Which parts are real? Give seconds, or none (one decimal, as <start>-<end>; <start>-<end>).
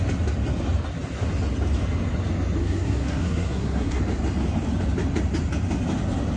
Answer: 0.0-2.6; 4.0-6.4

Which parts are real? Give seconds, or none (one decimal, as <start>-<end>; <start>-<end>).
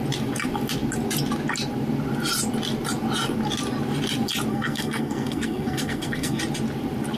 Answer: 0.0-4.5; 6.4-7.2